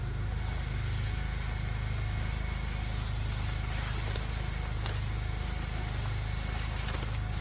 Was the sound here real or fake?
real